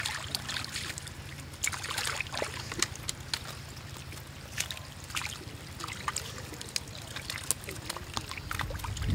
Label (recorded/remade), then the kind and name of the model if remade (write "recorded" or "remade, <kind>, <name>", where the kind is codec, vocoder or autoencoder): recorded